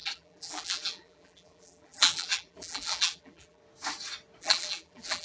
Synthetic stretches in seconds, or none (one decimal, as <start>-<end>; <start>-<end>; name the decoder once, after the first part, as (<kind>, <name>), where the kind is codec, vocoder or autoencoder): 0.0-3.6 (vocoder, BigVGAN v2); 4.4-5.2